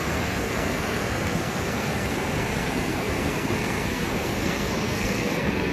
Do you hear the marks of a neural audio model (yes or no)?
yes